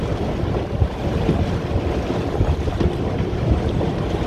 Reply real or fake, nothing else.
fake